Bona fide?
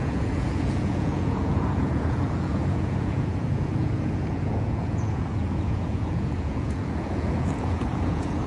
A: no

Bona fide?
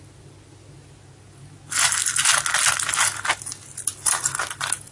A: yes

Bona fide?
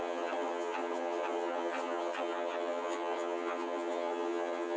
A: no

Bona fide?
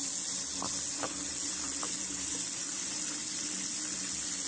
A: yes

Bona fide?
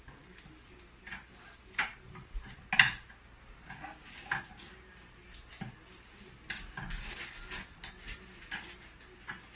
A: yes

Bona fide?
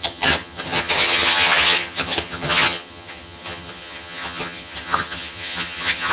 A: no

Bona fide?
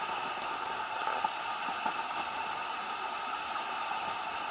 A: yes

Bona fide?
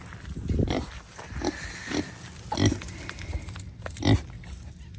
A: yes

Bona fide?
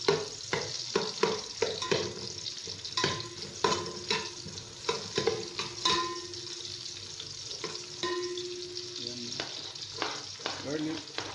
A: yes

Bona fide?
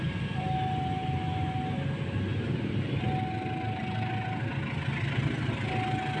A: yes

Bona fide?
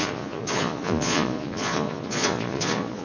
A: no